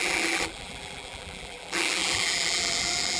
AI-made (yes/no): yes